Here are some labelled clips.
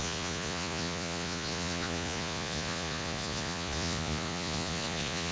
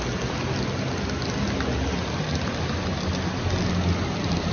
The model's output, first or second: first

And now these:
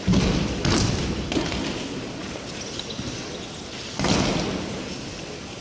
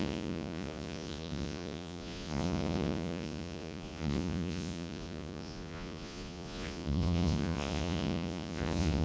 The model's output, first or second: second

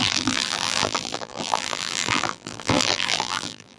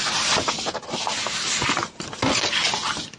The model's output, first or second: first